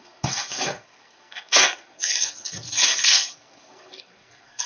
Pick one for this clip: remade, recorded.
remade